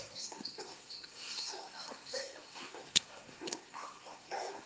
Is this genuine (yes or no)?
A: no